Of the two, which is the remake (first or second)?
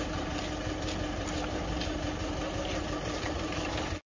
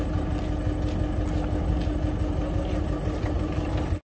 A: first